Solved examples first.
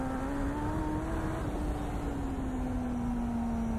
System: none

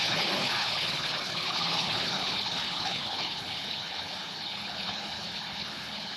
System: codec, HILCodec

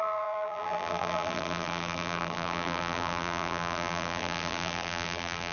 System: vocoder, BigVGAN v2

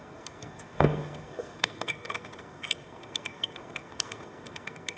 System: codec, SNAC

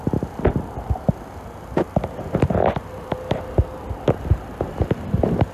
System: none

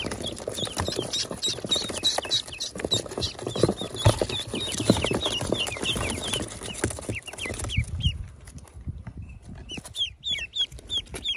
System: none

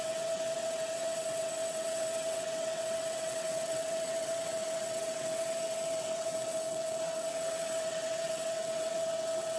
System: vocoder, WaveNeXt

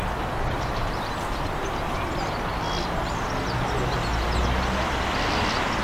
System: none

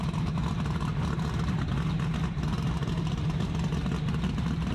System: none